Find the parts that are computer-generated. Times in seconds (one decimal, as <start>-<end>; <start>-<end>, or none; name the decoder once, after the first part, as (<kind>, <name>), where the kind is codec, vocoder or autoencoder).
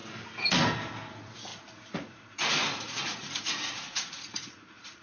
1.1-5.0 (vocoder, Vocos)